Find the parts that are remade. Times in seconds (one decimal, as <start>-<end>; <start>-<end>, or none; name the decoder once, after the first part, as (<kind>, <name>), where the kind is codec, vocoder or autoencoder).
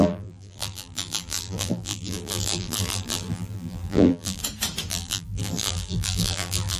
0.0-4.4 (vocoder, BigVGAN v2); 4.9-6.8